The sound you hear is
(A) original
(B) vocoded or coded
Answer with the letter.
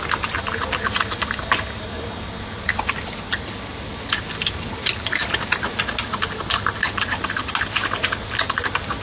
A